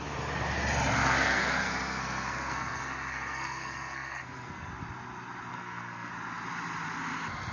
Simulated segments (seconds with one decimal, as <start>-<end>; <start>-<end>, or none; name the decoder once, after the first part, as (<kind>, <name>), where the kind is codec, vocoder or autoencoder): 1.0-4.7 (codec, SNAC); 5.5-6.1